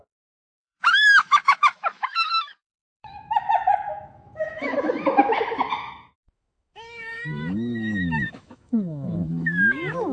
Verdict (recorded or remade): remade